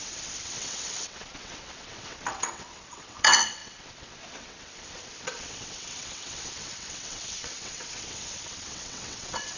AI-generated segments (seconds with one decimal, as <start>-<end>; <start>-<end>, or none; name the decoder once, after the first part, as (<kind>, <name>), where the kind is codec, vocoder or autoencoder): 0.0-9.6 (vocoder, WaveNeXt)